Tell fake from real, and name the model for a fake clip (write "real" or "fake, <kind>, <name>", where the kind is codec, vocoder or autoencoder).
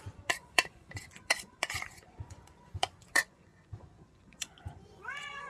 fake, vocoder, Vocos